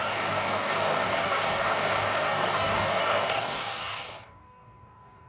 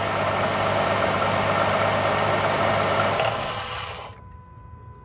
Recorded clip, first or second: second